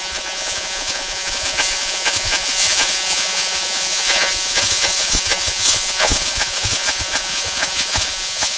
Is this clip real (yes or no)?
no